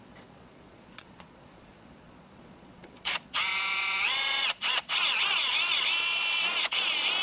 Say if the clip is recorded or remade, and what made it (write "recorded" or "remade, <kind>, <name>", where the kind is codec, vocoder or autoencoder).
remade, vocoder, Vocos